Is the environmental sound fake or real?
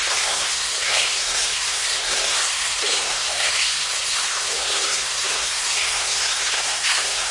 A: fake